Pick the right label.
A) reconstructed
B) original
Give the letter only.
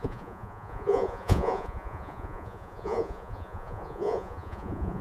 A